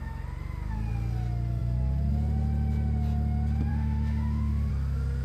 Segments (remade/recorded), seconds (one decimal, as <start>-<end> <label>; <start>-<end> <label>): 0.0-3.7 recorded; 3.7-4.7 remade; 4.7-5.2 recorded